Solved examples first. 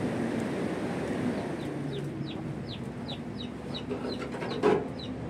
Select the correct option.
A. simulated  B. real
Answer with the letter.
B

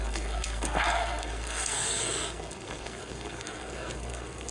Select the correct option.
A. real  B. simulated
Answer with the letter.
B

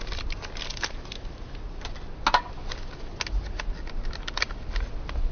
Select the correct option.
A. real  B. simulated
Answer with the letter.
A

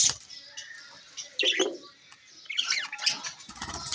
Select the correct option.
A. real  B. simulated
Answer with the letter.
A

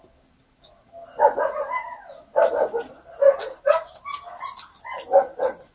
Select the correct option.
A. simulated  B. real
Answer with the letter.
B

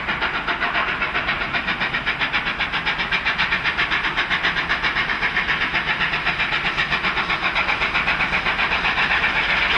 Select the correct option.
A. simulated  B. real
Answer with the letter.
B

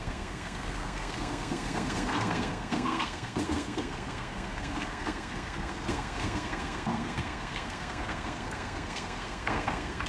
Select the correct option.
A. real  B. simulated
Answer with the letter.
B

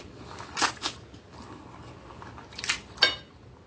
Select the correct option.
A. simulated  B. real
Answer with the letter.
B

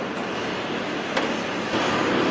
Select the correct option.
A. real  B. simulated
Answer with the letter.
A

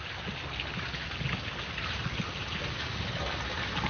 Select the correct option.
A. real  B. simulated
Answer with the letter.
A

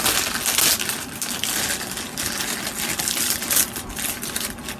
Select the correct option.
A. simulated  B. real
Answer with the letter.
B